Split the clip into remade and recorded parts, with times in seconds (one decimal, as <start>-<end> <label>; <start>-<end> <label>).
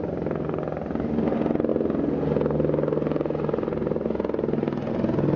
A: 0.0-5.4 recorded